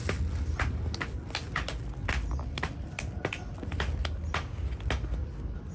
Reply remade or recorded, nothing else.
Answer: recorded